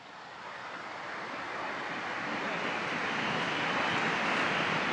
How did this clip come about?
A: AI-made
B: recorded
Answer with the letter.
B